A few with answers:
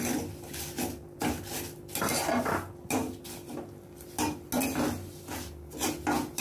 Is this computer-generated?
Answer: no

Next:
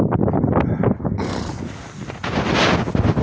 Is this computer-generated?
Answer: no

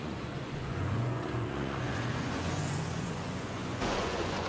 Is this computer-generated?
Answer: yes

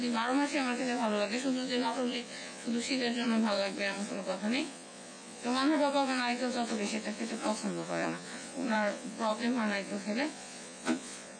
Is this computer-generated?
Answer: yes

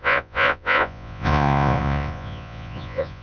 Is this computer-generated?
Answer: yes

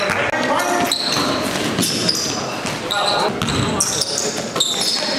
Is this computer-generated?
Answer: no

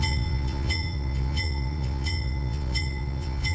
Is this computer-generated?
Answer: yes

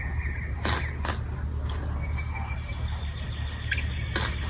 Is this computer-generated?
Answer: no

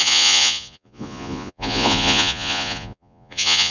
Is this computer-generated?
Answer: yes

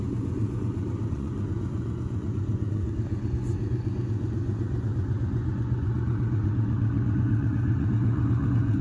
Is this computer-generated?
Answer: yes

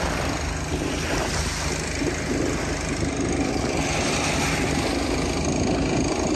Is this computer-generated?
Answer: no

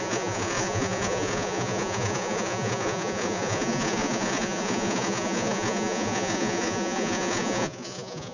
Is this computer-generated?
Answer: yes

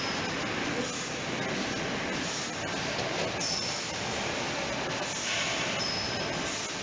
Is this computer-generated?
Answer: no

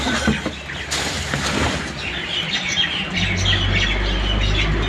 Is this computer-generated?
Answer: no